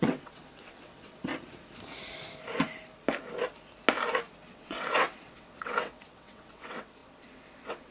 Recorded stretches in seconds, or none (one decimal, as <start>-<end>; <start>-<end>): 1.3-4.5